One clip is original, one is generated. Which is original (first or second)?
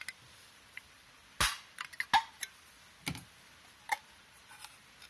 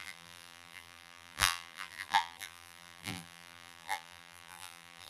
first